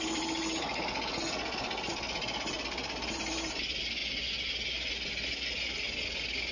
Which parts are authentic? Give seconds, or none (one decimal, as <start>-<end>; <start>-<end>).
0.0-6.5